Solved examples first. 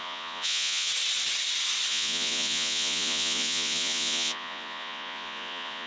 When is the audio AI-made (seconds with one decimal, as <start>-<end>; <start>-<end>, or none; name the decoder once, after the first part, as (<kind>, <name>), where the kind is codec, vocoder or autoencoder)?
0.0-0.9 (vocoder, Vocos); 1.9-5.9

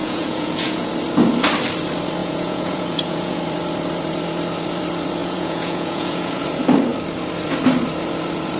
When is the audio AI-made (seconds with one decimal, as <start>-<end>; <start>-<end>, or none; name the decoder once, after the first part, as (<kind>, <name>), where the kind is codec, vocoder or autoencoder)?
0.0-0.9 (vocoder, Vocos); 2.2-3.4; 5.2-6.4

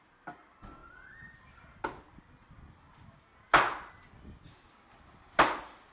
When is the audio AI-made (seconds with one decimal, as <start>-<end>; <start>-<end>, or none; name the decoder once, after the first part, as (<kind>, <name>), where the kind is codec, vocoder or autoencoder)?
none

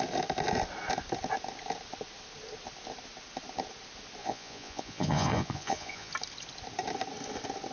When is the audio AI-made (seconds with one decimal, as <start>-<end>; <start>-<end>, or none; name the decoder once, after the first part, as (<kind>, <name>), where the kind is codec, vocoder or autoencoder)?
4.2-6.1 (vocoder, Vocos)

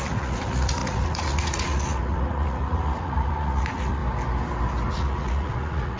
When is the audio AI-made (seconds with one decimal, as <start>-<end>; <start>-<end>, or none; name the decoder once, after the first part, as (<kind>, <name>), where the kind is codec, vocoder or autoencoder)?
0.0-4.0 (vocoder, Vocos); 4.9-6.0